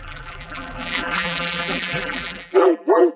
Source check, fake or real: fake